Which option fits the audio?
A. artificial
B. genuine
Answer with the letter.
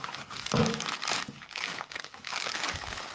A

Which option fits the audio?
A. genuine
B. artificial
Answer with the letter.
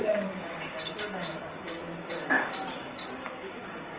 B